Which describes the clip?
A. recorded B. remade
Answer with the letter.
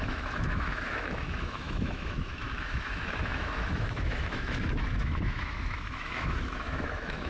B